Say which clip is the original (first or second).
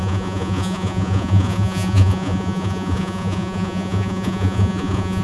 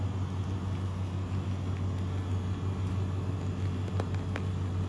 second